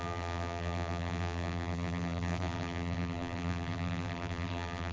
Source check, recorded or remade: remade